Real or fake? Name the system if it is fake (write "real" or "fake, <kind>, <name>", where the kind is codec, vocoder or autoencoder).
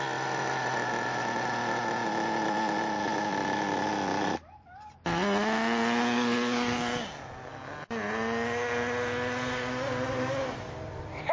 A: real